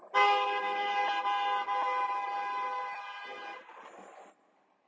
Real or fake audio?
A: real